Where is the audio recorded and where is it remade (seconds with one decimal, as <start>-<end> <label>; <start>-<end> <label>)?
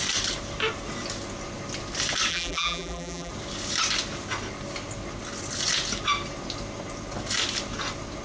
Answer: 0.0-2.3 recorded; 2.3-3.3 remade; 3.3-8.2 recorded